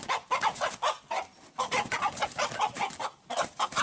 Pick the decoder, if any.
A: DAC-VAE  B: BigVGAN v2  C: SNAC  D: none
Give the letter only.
D